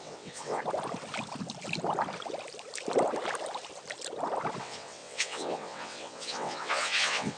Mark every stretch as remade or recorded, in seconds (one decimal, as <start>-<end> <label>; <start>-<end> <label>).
0.0-0.6 remade; 0.6-4.6 recorded; 4.6-7.4 remade